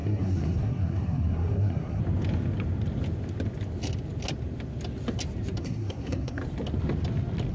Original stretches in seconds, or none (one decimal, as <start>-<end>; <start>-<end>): 2.0-5.6; 6.4-7.5